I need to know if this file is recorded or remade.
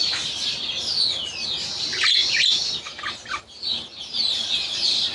recorded